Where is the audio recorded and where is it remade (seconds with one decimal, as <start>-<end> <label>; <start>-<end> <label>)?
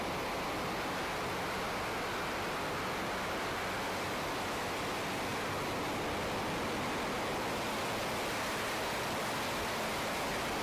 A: 0.0-10.6 recorded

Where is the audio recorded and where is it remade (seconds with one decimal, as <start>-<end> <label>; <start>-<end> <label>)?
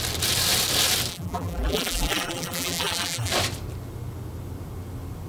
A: 0.0-1.1 recorded; 1.1-3.3 remade; 3.3-5.3 recorded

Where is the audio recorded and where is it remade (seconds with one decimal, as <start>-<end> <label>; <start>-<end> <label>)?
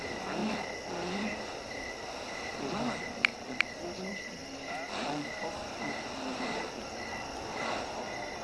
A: 0.0-8.4 recorded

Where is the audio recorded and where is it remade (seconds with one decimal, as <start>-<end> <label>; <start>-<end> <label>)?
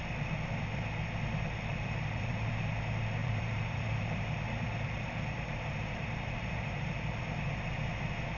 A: 0.0-1.7 recorded; 1.7-2.5 remade; 2.5-3.2 recorded; 3.2-7.2 remade; 7.2-8.4 recorded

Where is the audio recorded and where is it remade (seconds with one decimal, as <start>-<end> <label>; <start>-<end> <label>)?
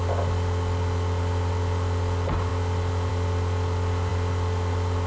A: 0.0-5.1 recorded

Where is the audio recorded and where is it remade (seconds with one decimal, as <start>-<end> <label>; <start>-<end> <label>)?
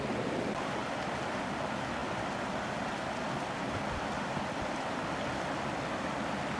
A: 0.0-6.6 recorded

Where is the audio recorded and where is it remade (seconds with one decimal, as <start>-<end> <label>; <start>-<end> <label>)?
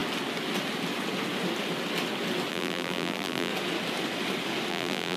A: 0.0-2.5 recorded; 2.5-3.5 remade; 3.5-4.7 recorded; 4.7-5.2 remade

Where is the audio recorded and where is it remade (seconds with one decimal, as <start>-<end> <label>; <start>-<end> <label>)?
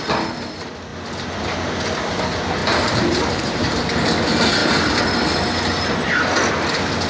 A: 0.0-2.6 recorded; 2.6-3.8 remade; 3.8-7.1 recorded